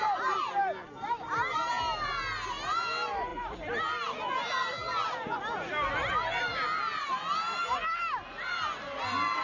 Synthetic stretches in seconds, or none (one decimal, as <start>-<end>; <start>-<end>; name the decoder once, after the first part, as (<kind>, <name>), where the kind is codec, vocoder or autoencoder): none